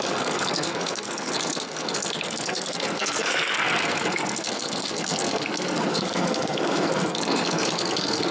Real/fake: fake